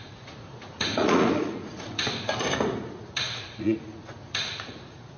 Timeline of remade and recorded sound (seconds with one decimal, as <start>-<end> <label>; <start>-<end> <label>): 0.0-2.0 remade; 2.0-2.8 recorded; 2.8-5.2 remade